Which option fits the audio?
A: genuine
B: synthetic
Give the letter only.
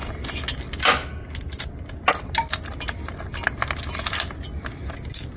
A